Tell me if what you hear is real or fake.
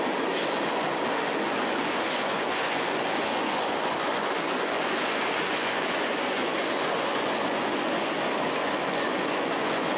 fake